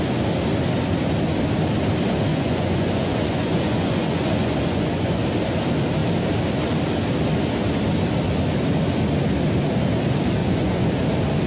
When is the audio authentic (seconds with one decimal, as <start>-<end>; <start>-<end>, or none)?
0.0-2.3; 5.2-10.4; 10.9-11.5